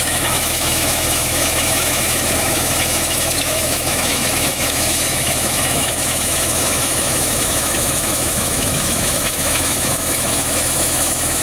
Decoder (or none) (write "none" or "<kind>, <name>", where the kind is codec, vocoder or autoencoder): autoencoder, DAC-VAE